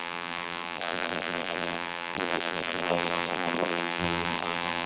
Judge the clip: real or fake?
fake